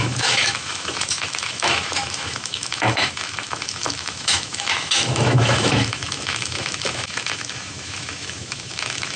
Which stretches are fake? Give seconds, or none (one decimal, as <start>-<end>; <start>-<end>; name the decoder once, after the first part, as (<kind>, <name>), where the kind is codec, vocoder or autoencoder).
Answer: 0.0-9.2 (autoencoder, DAC-VAE)